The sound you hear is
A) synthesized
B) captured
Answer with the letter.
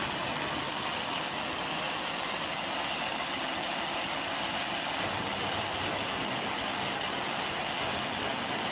B